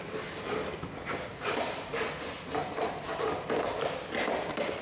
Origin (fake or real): real